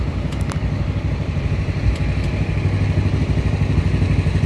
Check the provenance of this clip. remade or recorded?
recorded